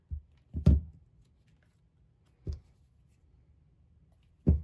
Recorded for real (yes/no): yes